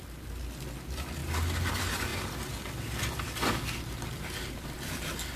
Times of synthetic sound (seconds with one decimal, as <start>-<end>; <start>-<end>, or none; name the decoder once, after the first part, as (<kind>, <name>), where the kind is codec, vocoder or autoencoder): none